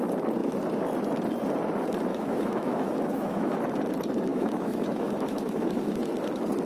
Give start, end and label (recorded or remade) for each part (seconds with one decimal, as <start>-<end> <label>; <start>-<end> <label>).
0.0-2.1 recorded; 2.1-3.6 remade; 3.6-4.3 recorded; 4.3-6.0 remade; 6.0-6.7 recorded